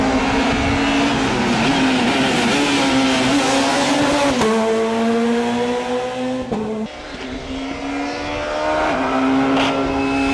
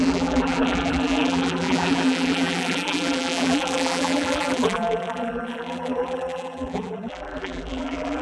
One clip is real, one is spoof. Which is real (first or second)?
first